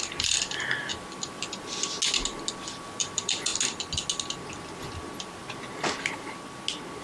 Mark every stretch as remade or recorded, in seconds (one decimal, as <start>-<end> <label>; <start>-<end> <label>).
0.0-0.9 remade; 0.9-2.5 recorded; 2.5-3.5 remade; 3.5-7.0 recorded